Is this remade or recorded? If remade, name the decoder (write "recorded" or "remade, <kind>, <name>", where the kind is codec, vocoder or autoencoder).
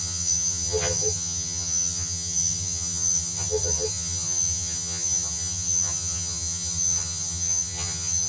remade, vocoder, HiFi-GAN